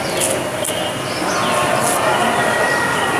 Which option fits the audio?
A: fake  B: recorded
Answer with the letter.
B